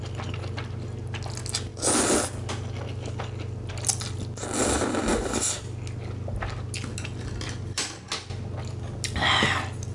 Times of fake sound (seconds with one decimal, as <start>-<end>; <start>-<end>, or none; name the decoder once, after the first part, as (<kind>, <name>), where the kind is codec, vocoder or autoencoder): none